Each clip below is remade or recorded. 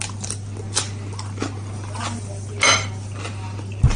recorded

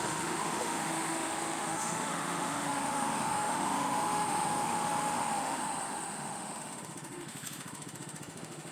remade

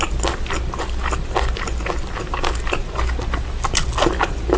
recorded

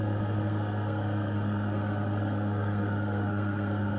remade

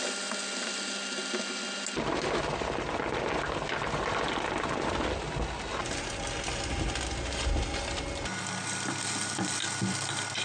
recorded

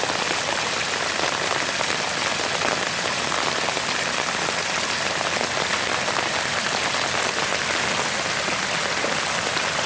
recorded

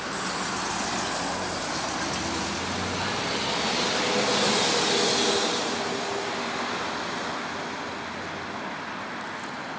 recorded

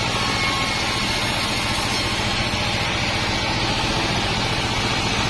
recorded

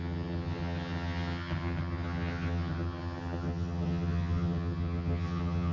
remade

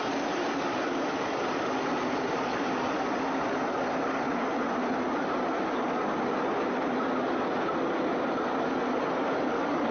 recorded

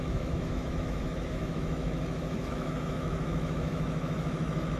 remade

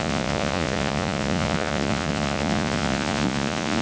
remade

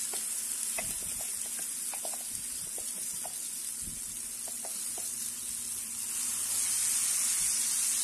recorded